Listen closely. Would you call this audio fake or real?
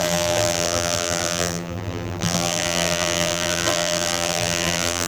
fake